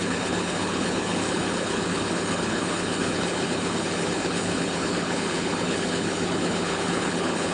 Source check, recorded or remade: remade